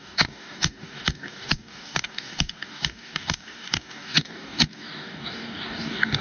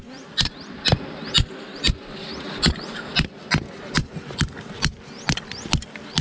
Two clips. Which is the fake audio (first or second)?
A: first